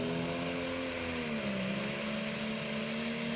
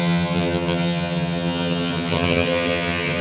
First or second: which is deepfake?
second